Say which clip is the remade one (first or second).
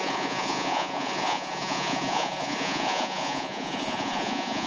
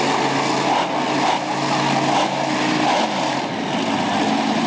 first